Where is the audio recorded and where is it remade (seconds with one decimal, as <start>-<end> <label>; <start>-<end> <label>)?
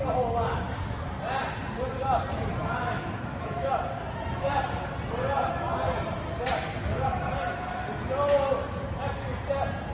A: 0.0-2.6 recorded; 2.6-3.7 remade; 3.7-9.9 recorded